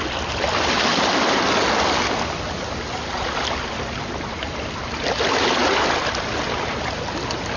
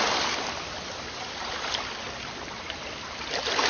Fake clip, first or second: second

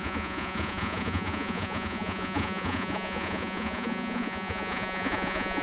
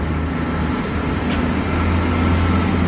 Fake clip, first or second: first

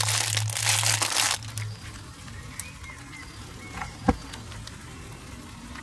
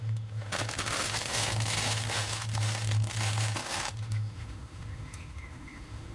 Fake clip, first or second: second